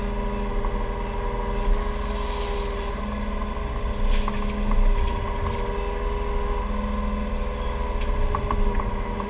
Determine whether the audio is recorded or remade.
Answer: recorded